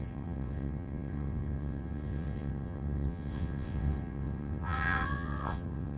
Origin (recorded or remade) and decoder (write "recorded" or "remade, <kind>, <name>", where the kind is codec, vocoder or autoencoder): remade, vocoder, WaveNeXt